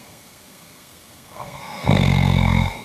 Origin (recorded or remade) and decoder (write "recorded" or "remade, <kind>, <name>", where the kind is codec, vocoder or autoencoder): remade, codec, SNAC